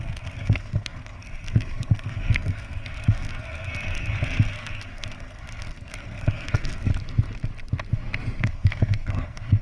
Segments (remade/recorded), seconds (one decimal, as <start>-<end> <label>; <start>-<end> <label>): 0.0-6.9 remade; 6.9-8.4 recorded; 8.4-9.6 remade